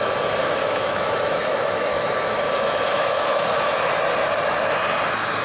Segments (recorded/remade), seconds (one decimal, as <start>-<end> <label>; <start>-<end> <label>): 0.0-0.4 recorded; 0.4-2.2 remade; 2.2-2.9 recorded; 2.9-3.7 remade; 3.7-5.4 recorded